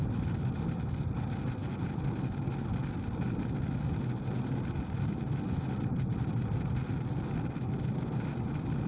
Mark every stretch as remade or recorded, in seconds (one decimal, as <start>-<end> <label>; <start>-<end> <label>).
0.0-8.9 recorded